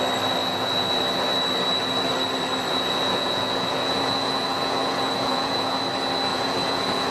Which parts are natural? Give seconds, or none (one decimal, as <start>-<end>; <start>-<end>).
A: 0.0-0.4; 1.0-2.7; 5.8-6.3